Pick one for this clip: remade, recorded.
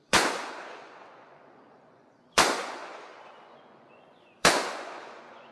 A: remade